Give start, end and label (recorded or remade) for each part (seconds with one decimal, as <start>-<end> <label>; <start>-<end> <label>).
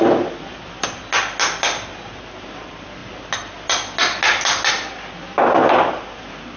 0.0-6.6 recorded